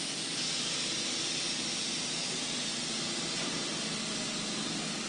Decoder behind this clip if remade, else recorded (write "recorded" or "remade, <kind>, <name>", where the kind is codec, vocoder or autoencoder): recorded